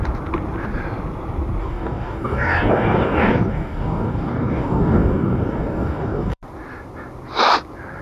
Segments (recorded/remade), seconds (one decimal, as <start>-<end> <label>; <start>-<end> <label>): 0.0-1.6 recorded; 1.6-6.4 remade; 6.4-8.0 recorded